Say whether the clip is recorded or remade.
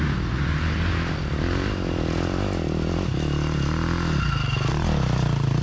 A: recorded